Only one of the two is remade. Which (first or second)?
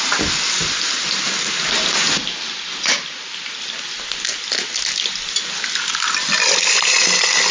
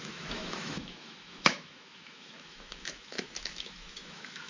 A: second